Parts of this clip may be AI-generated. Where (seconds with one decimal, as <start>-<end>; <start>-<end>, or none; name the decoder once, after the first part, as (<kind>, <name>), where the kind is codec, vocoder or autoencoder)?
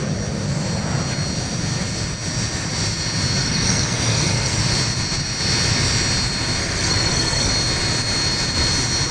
3.4-4.6 (codec, SNAC); 6.6-7.5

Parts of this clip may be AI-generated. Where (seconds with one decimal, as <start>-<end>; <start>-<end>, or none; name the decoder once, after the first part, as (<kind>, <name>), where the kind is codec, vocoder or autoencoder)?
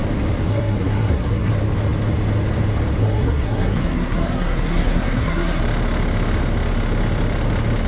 0.5-1.5 (codec, SNAC); 3.0-5.6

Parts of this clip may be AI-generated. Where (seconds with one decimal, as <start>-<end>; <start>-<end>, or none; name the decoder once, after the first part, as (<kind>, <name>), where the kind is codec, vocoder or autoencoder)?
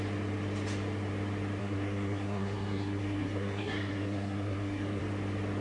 1.6-5.0 (codec, SNAC)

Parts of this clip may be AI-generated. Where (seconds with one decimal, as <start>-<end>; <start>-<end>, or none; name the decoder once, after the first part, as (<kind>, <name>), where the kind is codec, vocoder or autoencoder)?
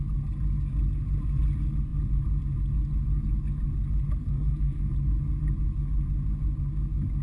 4.2-4.8 (codec, SNAC)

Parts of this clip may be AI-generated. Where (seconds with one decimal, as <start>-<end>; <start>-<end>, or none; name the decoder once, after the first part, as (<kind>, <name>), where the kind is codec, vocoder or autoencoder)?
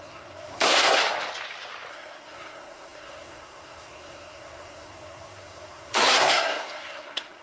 0.0-1.0 (codec, SNAC); 1.9-7.4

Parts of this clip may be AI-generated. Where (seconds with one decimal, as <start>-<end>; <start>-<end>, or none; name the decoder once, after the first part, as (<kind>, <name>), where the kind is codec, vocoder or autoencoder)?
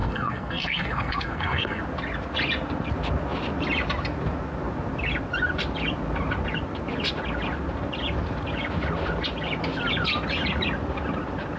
0.0-1.8 (codec, SNAC)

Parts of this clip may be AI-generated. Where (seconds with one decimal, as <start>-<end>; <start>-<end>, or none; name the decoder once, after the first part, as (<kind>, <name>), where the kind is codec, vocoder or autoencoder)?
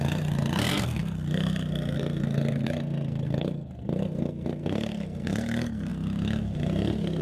0.0-7.2 (codec, SNAC)